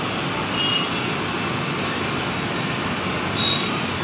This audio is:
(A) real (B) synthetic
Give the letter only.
A